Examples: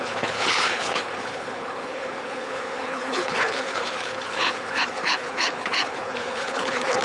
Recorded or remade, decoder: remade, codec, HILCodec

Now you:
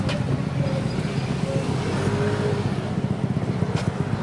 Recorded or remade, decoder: recorded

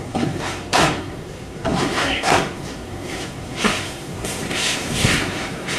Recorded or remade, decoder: remade, codec, SNAC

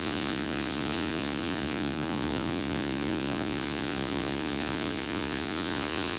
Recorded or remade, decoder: remade, vocoder, Vocos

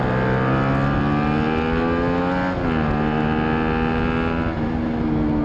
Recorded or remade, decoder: recorded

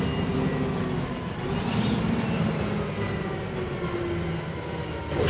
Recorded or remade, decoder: recorded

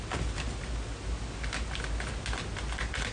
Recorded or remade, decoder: recorded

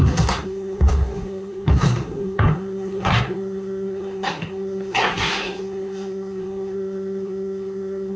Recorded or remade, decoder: remade, codec, SNAC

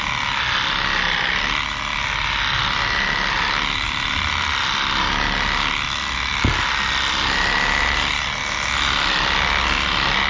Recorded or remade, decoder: recorded